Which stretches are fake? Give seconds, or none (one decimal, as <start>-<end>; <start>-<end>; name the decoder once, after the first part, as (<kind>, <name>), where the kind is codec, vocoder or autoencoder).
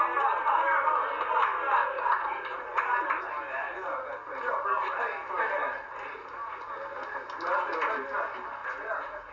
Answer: 1.8-2.8 (vocoder, Vocos); 8.6-9.3